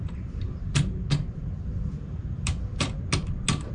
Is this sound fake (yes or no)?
no